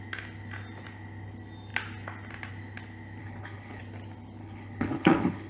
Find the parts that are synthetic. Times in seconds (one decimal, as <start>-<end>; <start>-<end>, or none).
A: 3.2-3.8; 4.4-5.5